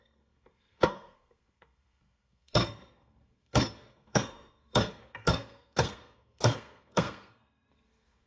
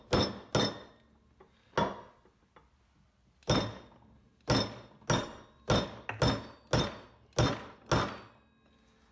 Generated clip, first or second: first